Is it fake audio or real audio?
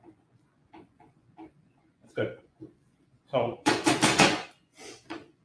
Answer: fake